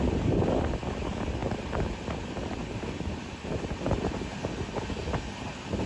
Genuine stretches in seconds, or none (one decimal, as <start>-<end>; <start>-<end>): 0.0-5.9